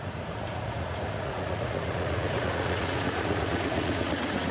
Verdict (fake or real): fake